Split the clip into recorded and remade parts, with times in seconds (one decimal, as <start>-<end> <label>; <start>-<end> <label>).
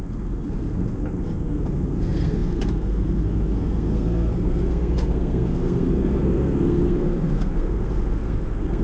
0.0-8.8 remade